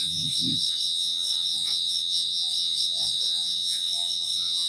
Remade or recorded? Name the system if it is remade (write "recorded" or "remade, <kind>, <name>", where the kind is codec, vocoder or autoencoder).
remade, vocoder, WaveNeXt